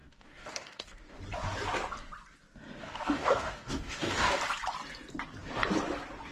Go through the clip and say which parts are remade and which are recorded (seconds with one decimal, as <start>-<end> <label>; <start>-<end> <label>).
0.0-1.2 remade; 1.2-2.8 recorded; 2.8-4.4 remade; 4.4-6.3 recorded